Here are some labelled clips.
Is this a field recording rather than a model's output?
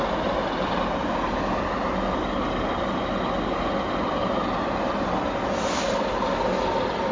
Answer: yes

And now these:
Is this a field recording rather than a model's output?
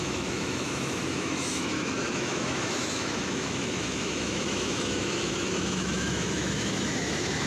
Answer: no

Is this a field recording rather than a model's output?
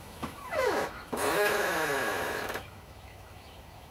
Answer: no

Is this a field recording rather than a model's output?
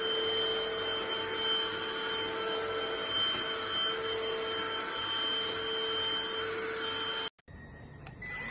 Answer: yes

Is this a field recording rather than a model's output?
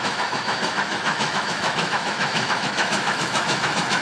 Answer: no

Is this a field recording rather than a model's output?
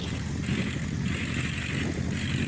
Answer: yes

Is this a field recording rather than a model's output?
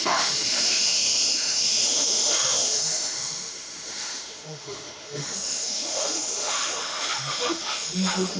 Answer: no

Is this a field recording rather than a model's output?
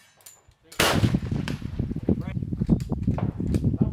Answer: yes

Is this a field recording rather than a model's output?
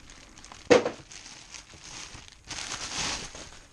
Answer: yes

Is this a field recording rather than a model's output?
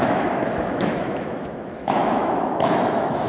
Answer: no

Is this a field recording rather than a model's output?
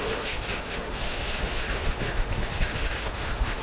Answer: no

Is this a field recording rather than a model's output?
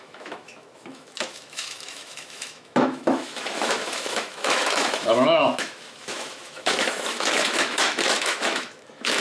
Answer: no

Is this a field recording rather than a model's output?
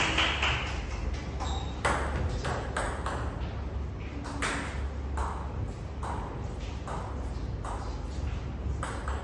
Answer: yes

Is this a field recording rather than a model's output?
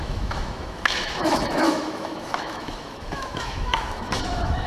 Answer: no